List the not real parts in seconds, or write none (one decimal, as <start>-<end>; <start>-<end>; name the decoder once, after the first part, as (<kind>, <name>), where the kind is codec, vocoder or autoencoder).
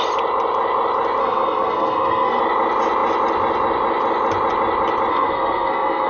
1.2-2.4 (codec, SNAC); 5.1-6.1